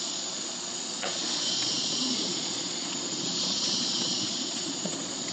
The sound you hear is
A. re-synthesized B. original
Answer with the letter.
A